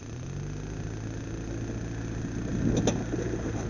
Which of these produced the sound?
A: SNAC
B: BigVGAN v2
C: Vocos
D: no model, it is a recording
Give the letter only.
D